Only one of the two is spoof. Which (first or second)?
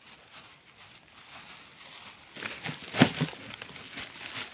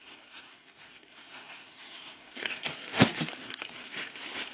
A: second